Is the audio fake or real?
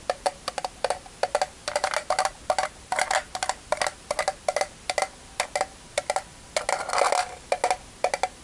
real